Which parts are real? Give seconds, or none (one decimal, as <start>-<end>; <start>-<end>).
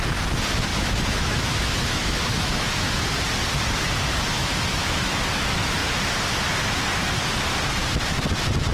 0.0-0.7; 3.0-4.4; 5.2-8.7